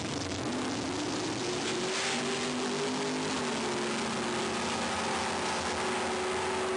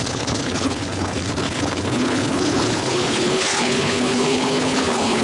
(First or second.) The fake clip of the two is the second